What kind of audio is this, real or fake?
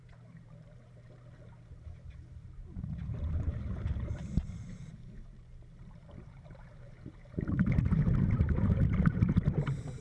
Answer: fake